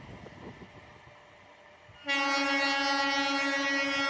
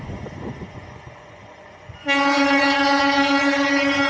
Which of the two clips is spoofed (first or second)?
second